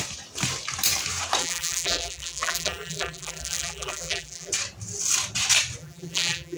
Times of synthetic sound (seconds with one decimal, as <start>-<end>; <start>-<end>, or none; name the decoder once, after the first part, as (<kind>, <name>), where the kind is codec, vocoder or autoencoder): 1.4-4.5 (vocoder, BigVGAN v2); 5.8-6.6